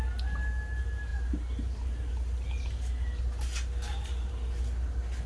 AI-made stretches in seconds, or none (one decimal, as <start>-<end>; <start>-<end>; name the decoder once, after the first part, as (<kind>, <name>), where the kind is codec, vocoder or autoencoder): none

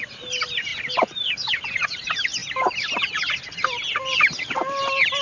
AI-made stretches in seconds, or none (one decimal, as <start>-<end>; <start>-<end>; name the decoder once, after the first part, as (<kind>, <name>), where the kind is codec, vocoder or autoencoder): none

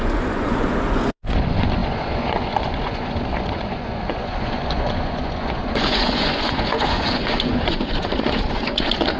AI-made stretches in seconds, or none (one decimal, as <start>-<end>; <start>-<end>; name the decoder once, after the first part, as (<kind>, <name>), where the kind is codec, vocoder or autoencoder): 0.0-9.2 (vocoder, Vocos)

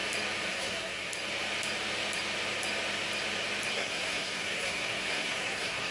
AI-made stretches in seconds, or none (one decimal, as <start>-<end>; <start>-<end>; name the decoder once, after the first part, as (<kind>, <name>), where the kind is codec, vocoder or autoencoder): 0.5-1.1 (codec, SNAC); 3.7-5.9

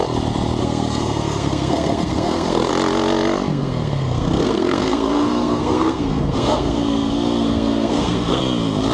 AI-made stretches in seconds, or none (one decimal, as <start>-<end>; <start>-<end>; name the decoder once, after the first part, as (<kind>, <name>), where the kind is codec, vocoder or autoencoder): 0.6-2.7 (codec, SNAC); 3.5-8.4